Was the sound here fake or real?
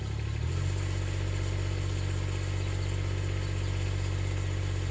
real